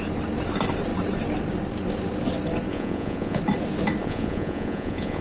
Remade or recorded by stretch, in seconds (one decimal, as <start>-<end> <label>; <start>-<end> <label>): 0.0-2.7 recorded; 2.7-3.4 remade; 3.4-4.0 recorded; 4.0-5.2 remade